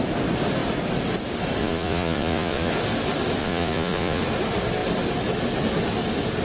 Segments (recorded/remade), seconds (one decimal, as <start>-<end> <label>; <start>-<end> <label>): 0.0-1.6 recorded; 1.6-2.7 remade; 2.7-3.4 recorded; 3.4-4.2 remade; 4.2-6.4 recorded